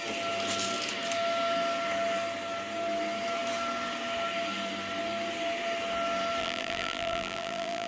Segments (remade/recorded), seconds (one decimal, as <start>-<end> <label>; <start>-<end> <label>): 0.0-6.4 recorded; 6.4-7.9 remade